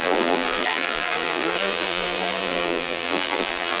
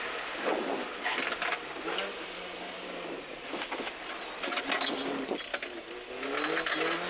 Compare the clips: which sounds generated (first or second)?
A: first